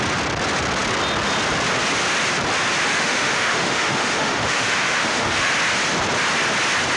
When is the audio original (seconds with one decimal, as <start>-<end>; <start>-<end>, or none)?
0.0-2.9; 5.5-7.0